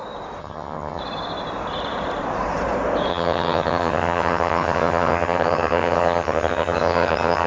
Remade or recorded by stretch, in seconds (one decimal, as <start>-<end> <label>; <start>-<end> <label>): 0.0-0.4 recorded; 0.4-1.0 remade; 1.0-3.1 recorded; 3.1-7.5 remade